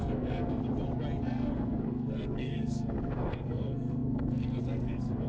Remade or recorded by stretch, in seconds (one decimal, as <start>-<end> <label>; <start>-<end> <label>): 0.0-0.6 remade; 0.6-1.2 recorded; 1.2-5.3 remade